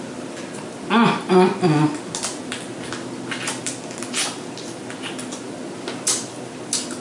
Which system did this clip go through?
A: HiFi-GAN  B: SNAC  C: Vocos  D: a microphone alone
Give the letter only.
D